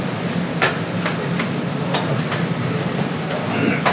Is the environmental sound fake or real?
real